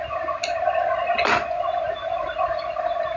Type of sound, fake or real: real